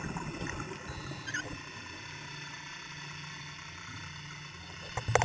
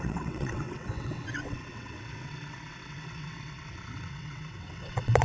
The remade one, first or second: second